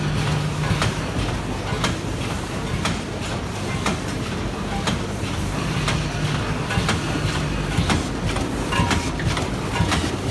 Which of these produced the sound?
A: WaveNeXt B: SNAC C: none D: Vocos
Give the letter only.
C